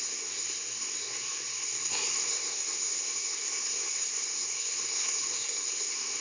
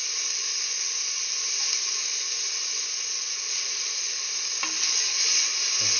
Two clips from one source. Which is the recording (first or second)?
second